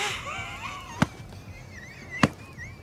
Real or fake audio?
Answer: real